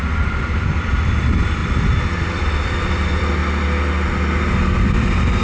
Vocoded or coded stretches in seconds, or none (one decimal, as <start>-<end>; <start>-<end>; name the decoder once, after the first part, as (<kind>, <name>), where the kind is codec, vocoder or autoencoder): 0.0-1.6 (vocoder, BigVGAN v2); 2.2-3.4; 4.9-5.4